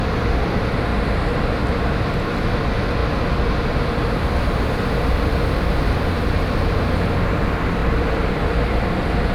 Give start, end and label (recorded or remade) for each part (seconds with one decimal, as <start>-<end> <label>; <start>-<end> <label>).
0.0-7.8 recorded; 7.8-8.3 remade; 8.3-9.3 recorded